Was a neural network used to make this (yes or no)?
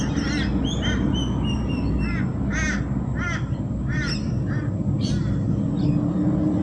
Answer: no